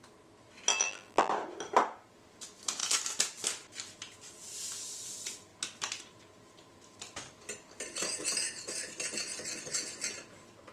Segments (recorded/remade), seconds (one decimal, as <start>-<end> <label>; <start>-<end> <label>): 0.0-0.7 recorded; 0.7-1.3 remade; 1.3-10.7 recorded